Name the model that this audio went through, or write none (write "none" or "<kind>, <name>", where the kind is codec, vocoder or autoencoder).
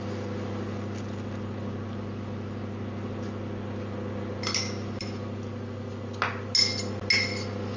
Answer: none